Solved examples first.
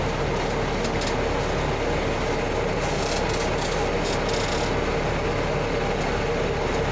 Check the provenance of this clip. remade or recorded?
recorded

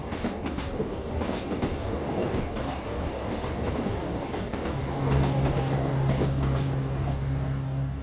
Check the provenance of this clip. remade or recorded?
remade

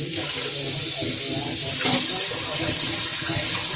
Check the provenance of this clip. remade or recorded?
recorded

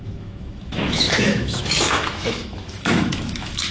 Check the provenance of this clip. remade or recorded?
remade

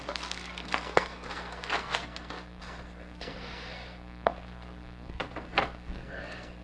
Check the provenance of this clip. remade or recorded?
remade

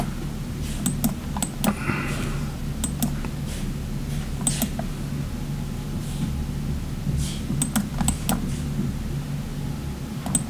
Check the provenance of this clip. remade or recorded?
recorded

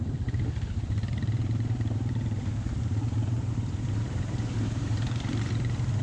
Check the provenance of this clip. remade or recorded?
remade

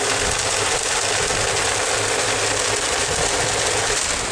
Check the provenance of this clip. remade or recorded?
recorded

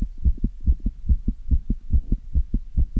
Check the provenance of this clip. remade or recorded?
recorded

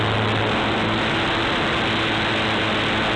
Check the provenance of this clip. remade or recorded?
recorded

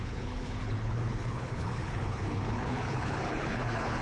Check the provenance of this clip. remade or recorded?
remade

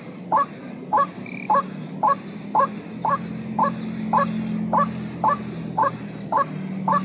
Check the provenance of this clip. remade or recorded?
recorded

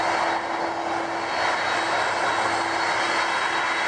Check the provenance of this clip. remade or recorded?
recorded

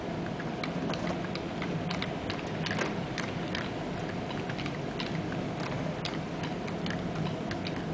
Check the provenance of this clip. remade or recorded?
recorded